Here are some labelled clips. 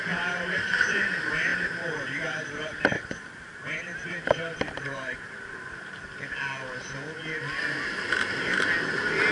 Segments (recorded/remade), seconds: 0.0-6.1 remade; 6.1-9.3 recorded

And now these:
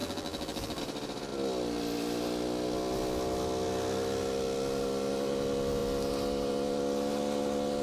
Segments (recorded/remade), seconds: 0.0-0.8 remade; 0.8-7.8 recorded

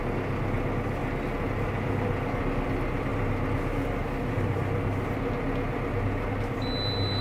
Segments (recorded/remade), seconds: 0.0-7.2 recorded

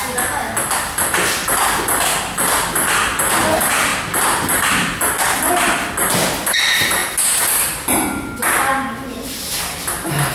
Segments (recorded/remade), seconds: 0.0-10.3 recorded

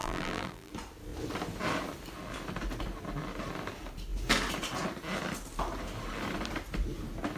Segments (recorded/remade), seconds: 0.0-0.7 remade; 0.7-7.4 recorded

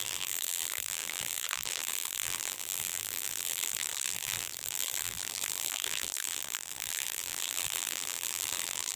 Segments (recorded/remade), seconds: 0.0-9.0 remade

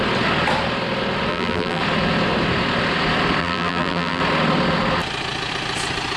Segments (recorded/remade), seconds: 0.0-1.3 recorded; 1.3-1.8 remade; 1.8-3.4 recorded; 3.4-4.2 remade; 4.2-6.2 recorded